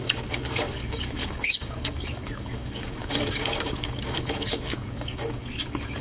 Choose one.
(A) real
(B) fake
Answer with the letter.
B